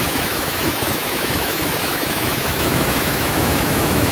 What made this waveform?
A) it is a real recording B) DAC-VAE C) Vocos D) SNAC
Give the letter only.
B